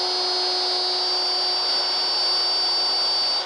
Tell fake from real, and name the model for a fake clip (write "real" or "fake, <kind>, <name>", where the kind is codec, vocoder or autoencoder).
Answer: real